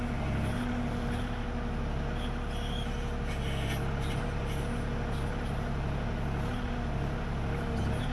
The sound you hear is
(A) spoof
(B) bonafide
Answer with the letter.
B